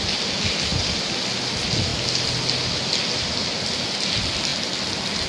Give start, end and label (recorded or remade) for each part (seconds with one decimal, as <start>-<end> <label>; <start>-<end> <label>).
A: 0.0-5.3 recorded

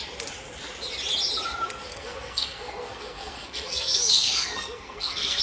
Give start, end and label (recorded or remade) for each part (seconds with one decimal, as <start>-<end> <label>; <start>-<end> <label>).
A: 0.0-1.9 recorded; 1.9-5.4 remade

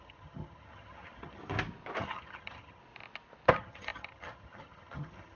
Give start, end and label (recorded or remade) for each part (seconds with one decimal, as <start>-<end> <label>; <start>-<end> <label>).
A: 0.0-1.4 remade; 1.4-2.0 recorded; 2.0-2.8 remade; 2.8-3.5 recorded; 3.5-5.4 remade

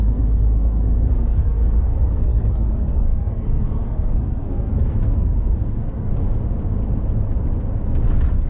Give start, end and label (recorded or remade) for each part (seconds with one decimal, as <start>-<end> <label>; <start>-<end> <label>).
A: 0.0-6.1 remade; 6.1-8.5 recorded

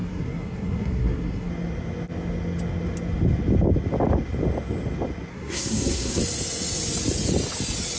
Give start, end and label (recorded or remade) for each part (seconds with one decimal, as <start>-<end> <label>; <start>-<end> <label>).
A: 0.0-1.5 remade; 1.5-5.3 recorded; 5.3-6.2 remade; 6.2-8.0 recorded

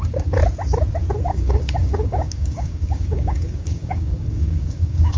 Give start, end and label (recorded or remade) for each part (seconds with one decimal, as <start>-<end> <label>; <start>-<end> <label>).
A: 0.0-0.4 remade; 0.4-1.3 recorded; 1.3-5.2 remade